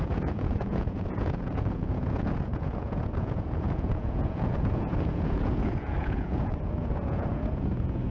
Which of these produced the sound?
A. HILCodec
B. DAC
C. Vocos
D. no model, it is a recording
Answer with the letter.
C